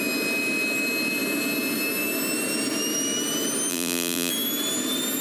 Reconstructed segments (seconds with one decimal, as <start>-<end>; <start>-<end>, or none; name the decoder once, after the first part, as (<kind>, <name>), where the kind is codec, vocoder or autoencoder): 3.7-4.3 (vocoder, BigVGAN v2)